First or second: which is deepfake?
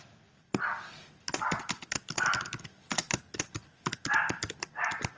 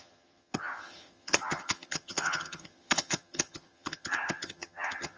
second